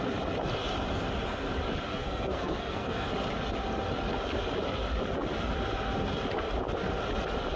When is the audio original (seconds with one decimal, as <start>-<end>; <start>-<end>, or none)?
0.0-1.9; 3.1-7.6